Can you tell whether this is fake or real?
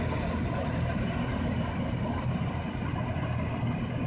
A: real